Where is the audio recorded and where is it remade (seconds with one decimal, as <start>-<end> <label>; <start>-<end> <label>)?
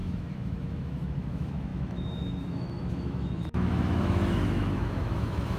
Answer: 0.0-5.6 remade